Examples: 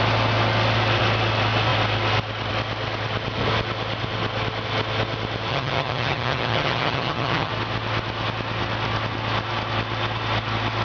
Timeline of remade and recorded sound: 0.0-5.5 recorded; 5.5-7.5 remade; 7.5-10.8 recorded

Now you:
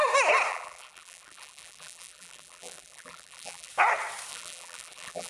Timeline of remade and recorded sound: 0.0-0.5 recorded; 0.5-3.7 remade; 3.7-4.3 recorded; 4.3-5.3 remade